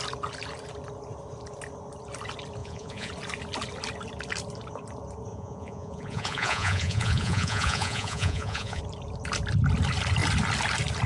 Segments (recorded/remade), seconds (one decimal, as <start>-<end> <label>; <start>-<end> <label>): 0.0-2.6 recorded; 2.6-3.1 remade; 3.1-5.3 recorded; 5.3-8.8 remade; 8.8-11.1 recorded